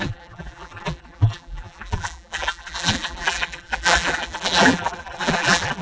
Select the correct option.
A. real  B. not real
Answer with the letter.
B